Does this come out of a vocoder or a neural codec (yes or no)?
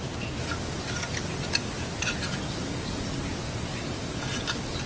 no